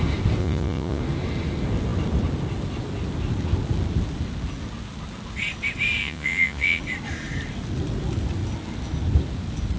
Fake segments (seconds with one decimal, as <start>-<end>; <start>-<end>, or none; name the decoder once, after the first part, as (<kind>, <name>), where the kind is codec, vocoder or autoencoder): 0.4-1.0 (vocoder, Vocos); 6.0-6.8